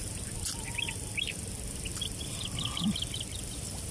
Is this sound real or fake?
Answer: fake